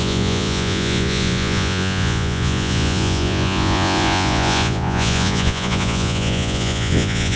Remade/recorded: remade